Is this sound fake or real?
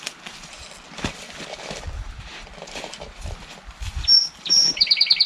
fake